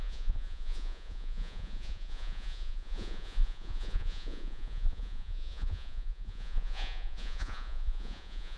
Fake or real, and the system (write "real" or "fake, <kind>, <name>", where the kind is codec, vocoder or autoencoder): fake, vocoder, Vocos